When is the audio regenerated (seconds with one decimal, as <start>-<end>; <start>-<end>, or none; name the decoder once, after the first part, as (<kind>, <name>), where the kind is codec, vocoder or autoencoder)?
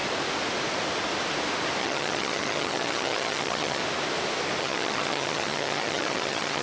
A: 1.8-3.8 (vocoder, HiFi-GAN); 4.6-6.6